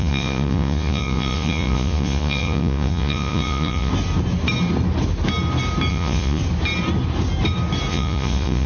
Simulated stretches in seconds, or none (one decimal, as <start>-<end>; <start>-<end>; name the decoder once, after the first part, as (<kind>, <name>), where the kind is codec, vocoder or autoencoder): 0.0-3.9 (vocoder, Vocos); 5.9-6.4; 7.9-8.7